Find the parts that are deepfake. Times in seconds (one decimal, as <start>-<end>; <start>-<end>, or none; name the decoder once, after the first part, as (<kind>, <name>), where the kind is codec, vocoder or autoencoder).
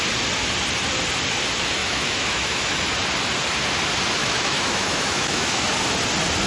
1.8-2.9 (autoencoder, DAC-VAE); 4.2-5.7